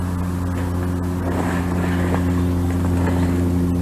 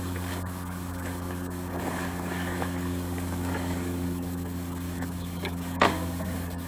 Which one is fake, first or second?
second